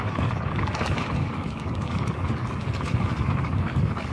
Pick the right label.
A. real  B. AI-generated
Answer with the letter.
B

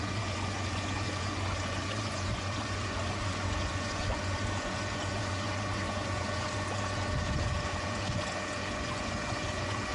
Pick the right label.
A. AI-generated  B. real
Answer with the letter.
A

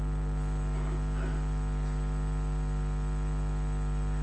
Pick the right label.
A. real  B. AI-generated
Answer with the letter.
B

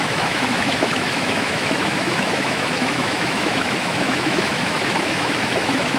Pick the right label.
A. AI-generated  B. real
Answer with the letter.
A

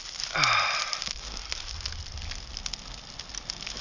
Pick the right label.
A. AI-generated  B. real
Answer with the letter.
B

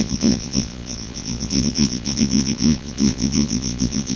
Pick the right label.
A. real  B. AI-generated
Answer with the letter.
B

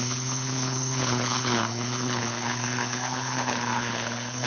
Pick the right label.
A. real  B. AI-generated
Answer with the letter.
B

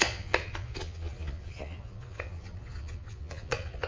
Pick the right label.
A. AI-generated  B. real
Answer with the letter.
A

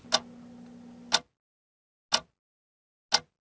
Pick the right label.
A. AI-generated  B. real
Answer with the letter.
B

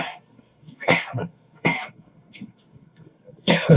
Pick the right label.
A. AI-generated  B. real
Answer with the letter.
A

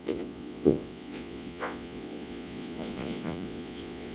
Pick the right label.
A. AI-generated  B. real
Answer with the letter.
A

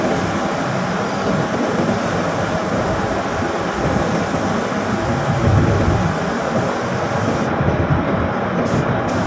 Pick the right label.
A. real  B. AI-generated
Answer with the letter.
A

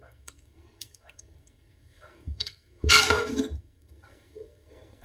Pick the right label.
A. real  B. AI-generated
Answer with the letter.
B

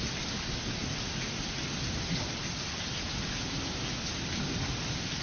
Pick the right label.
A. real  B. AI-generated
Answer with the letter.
A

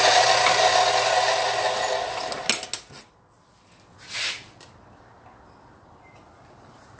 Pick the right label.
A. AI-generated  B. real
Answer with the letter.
B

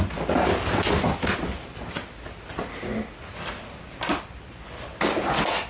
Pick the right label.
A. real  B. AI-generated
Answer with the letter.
A